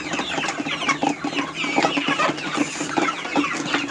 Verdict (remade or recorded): recorded